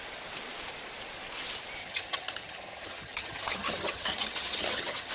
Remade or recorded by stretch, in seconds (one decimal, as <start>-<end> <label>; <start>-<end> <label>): 0.0-1.8 recorded; 1.8-5.1 remade